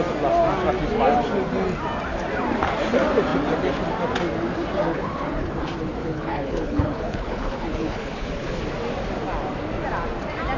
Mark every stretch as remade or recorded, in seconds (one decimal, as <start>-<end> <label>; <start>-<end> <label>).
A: 0.0-4.9 recorded; 4.9-5.5 remade; 5.5-6.0 recorded; 6.0-8.6 remade; 8.6-10.6 recorded